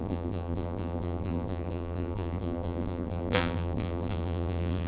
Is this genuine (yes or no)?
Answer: no